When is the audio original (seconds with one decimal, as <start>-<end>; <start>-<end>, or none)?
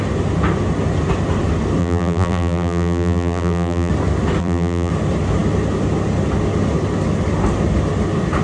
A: 0.0-1.8; 3.9-4.4; 4.9-8.4